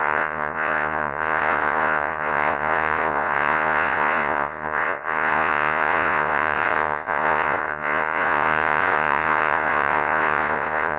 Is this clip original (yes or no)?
no